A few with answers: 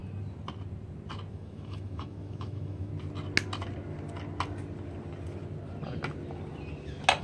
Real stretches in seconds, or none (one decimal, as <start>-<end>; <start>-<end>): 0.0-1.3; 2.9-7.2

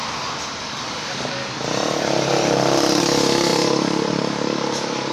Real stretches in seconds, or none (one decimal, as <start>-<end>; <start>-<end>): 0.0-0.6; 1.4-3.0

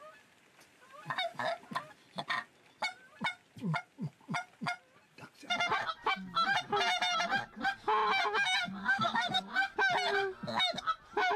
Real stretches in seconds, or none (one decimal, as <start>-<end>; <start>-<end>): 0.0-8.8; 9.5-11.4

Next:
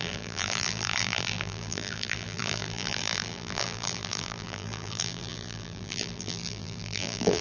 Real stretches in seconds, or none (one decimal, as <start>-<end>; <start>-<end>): none

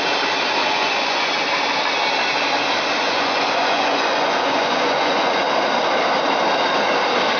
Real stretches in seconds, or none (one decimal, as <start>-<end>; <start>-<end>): 0.0-0.6; 1.3-3.0; 5.4-7.4